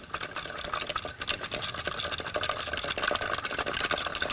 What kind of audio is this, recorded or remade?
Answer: recorded